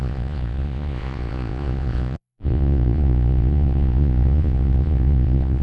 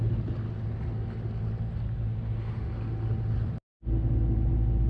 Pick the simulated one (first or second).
first